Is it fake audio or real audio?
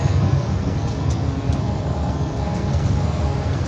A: fake